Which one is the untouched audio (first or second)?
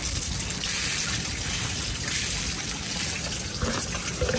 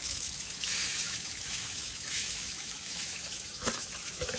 first